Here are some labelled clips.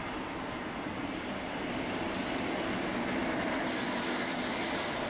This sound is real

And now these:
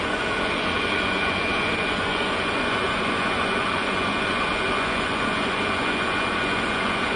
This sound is fake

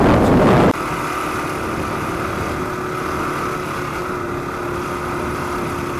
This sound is real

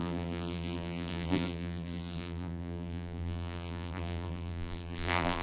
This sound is fake